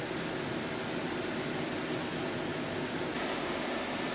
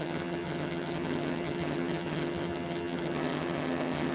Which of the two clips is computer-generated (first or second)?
second